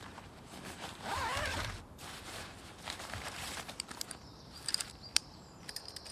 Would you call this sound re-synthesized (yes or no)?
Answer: yes